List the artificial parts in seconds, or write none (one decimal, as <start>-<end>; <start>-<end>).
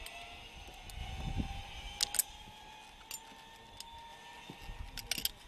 none